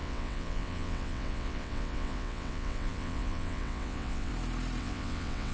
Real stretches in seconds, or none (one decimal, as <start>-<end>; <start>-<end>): 4.3-4.8